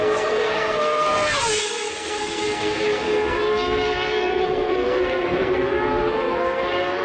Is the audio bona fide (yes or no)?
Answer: no